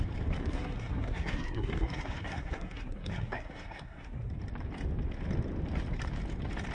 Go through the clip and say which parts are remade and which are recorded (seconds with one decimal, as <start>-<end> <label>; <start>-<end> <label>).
0.0-0.4 recorded; 0.4-4.3 remade; 4.3-6.7 recorded

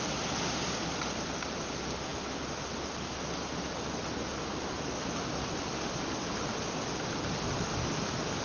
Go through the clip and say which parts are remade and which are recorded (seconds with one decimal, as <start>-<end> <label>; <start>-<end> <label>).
0.0-8.4 recorded

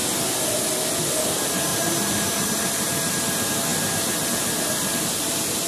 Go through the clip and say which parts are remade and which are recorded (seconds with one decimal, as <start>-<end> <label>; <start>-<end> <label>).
0.0-1.7 recorded; 1.7-3.1 remade; 3.1-5.7 recorded

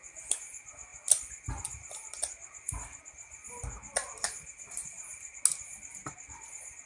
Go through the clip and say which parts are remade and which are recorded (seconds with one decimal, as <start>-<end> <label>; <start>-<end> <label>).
0.0-6.9 recorded